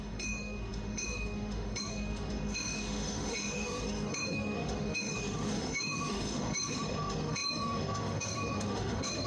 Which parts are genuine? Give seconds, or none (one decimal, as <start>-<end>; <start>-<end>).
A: none